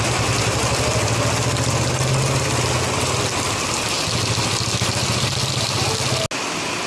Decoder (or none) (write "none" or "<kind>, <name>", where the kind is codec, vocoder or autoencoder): none